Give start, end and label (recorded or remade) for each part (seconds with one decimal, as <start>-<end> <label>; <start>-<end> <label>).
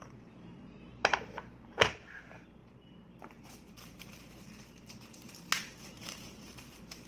0.0-7.1 remade